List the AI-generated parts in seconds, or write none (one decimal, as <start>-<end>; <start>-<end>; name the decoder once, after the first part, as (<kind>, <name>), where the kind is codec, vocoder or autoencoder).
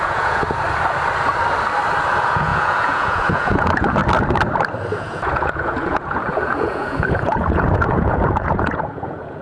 0.0-0.4 (vocoder, Vocos); 2.1-4.0; 4.9-9.4